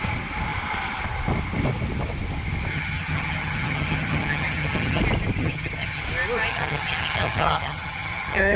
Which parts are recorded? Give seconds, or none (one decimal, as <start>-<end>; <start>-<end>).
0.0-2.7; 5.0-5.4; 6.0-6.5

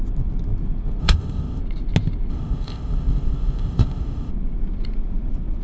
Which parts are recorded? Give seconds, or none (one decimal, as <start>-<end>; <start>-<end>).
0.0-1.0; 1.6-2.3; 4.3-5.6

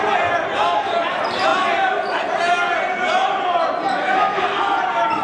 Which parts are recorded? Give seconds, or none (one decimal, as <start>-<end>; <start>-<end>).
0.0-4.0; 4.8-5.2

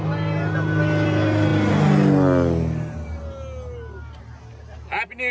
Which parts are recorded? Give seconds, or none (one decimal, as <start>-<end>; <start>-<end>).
0.0-5.3

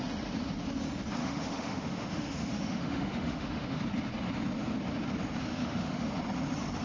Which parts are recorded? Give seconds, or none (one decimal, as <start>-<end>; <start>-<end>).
0.0-1.2; 3.8-5.5; 6.1-6.8

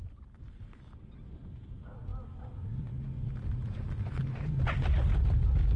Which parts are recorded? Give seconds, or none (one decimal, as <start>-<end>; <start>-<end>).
0.0-5.8

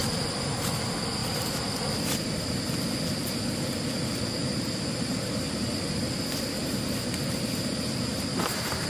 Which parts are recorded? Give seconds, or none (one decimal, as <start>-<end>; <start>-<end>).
0.0-1.2; 1.8-4.4; 6.0-6.6